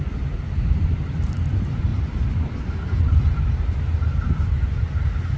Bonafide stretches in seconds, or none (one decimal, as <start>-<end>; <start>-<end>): 0.0-5.4